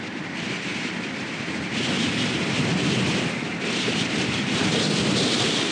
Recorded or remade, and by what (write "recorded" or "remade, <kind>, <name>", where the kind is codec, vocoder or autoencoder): recorded